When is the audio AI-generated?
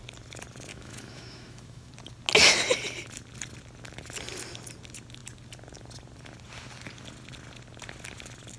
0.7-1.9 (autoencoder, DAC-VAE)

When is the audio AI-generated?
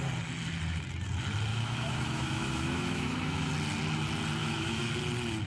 1.5-3.5 (autoencoder, DAC-VAE); 4.4-4.9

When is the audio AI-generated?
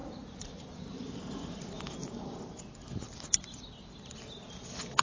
none